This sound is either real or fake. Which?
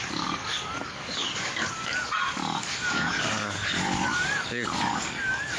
fake